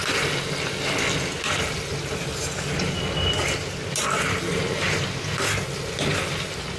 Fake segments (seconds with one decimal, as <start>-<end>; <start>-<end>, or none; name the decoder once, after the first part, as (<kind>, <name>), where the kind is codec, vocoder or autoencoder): none